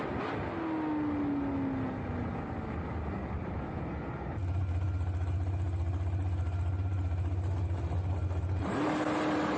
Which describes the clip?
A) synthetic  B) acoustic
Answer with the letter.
B